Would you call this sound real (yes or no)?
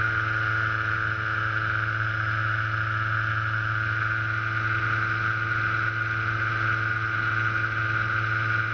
yes